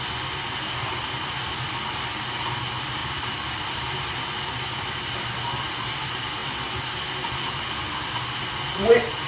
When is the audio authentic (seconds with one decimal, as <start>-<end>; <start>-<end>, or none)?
0.0-9.3